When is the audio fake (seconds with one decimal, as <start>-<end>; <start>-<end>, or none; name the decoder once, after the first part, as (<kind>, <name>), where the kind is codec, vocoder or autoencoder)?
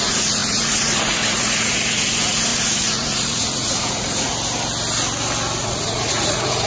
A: 0.0-4.3 (vocoder, Vocos); 5.6-6.7